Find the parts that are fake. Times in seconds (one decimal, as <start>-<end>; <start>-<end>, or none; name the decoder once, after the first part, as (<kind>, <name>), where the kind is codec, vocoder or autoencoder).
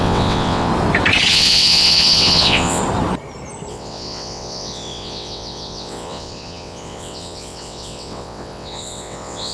0.0-0.7 (vocoder, WaveNeXt); 1.3-2.8; 3.7-9.5